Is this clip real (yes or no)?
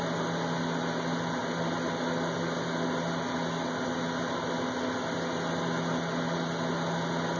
yes